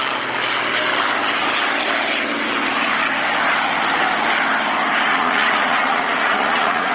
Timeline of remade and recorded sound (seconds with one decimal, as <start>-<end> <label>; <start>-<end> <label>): 0.0-5.1 recorded; 5.1-6.9 remade